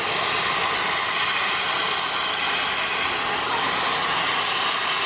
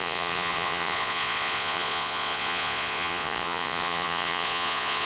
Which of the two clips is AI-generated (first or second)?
second